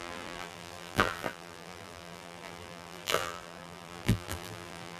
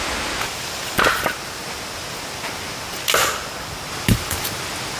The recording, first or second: second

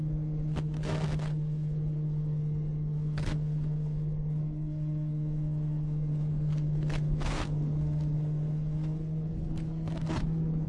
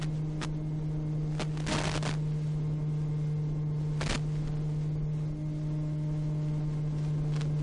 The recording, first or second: second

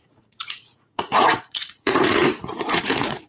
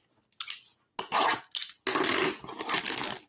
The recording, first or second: second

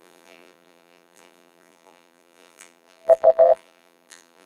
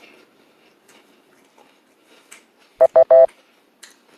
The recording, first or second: second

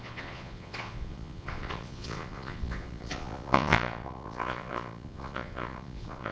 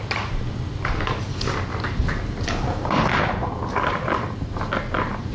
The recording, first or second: second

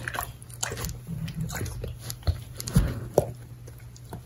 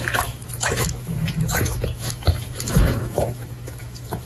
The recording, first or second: first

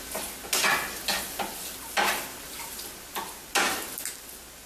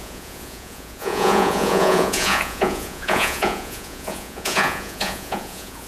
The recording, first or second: first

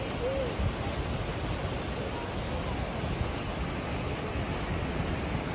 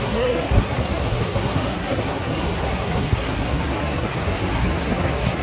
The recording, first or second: first